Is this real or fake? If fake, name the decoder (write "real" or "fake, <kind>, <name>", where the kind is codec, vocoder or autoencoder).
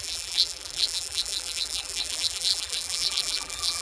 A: fake, vocoder, BigVGAN v2